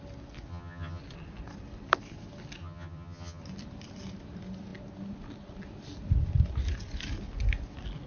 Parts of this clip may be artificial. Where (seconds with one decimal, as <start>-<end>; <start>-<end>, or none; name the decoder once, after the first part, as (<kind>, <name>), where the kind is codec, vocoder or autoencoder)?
0.5-1.0 (vocoder, HiFi-GAN); 2.6-3.4